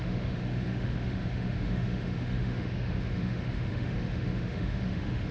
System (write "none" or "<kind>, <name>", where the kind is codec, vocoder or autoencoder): autoencoder, DAC-VAE